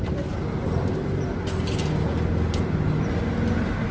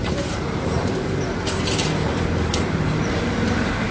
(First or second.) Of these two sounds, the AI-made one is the second